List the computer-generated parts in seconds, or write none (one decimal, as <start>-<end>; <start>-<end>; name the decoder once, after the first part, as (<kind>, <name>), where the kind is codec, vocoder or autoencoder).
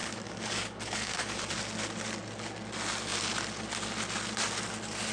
0.0-1.5 (codec, DAC)